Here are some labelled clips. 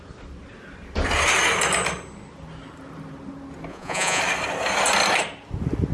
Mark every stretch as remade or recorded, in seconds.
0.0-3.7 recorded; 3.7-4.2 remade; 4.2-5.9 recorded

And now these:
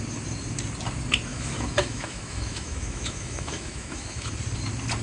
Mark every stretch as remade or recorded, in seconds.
0.0-1.3 recorded; 1.3-4.3 remade; 4.3-5.0 recorded

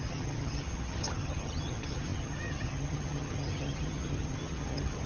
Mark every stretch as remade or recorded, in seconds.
0.0-5.1 remade

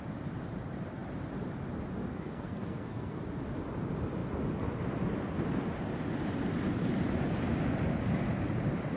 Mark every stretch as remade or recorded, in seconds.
0.0-2.1 recorded; 2.1-3.2 remade; 3.2-9.0 recorded

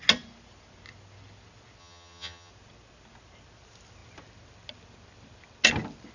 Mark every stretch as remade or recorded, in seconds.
0.0-1.8 recorded; 1.8-2.5 remade; 2.5-6.1 recorded

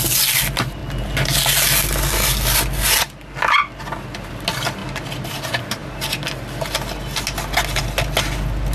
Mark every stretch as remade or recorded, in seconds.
0.0-8.7 recorded

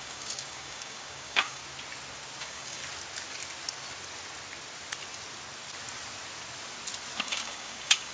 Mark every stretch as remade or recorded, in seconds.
0.0-1.6 remade; 1.6-2.4 recorded; 2.4-2.8 remade; 2.8-7.2 recorded; 7.2-8.1 remade

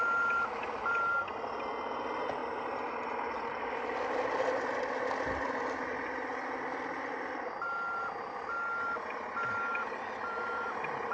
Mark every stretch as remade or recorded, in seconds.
0.0-2.4 remade; 2.4-3.2 recorded; 3.2-11.1 remade